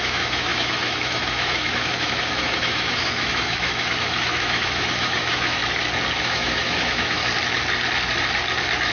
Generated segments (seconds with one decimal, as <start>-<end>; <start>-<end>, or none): 0.0-5.6; 6.2-7.2